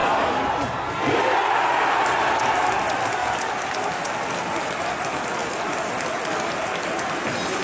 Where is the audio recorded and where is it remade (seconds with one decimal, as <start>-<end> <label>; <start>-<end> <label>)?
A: 0.0-7.6 recorded